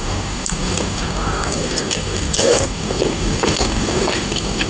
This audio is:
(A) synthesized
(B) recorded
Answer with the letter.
A